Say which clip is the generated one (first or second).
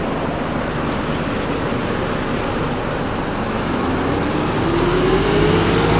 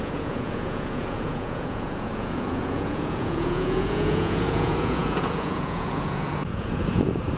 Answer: second